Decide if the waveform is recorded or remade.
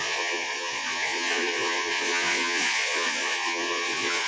remade